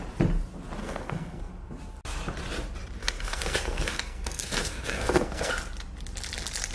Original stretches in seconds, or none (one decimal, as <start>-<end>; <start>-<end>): 0.0-0.8; 1.5-3.0; 5.5-6.7